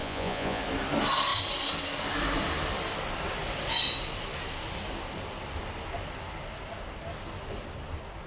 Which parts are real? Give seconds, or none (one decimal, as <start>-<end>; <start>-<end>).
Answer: 0.6-8.3